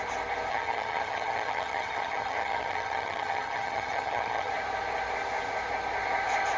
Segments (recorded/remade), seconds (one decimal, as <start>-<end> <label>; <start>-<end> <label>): 0.0-0.5 recorded; 0.5-4.5 remade; 4.5-6.6 recorded